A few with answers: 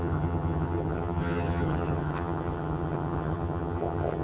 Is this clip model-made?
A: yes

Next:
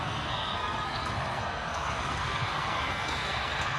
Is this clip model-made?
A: yes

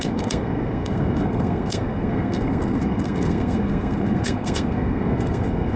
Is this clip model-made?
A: yes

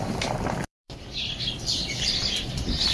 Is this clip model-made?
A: yes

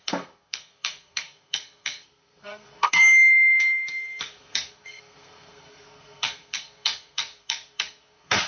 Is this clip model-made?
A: yes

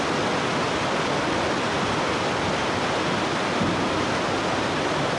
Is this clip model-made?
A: no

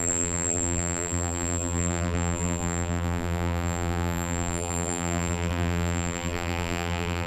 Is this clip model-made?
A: yes